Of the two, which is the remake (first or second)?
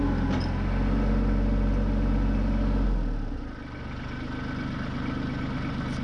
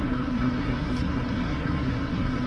second